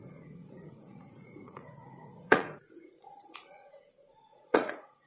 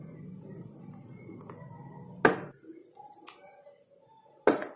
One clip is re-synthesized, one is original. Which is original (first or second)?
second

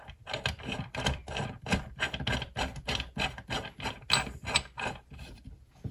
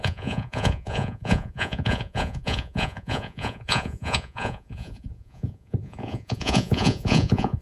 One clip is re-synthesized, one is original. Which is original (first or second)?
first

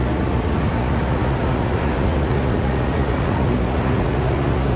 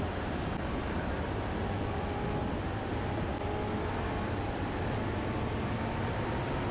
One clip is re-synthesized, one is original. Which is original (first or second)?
second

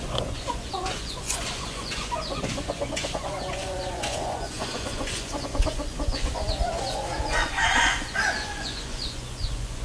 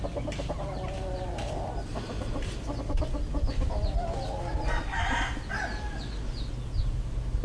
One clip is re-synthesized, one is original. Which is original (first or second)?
second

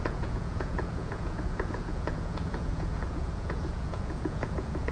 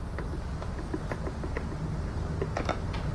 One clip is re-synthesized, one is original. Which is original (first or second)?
second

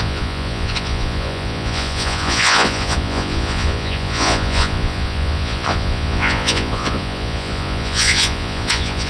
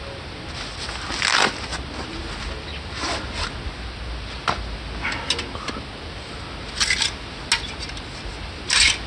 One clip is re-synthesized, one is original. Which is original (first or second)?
second